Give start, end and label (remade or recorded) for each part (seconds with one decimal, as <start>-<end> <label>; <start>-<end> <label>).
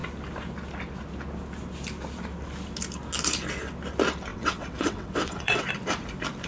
0.0-4.3 recorded; 4.3-5.7 remade; 5.7-6.5 recorded